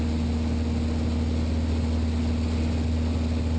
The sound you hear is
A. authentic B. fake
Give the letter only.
A